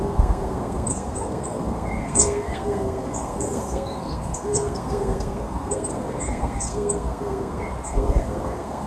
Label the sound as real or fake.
fake